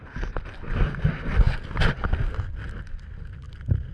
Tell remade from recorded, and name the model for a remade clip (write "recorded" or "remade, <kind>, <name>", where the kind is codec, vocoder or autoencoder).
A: recorded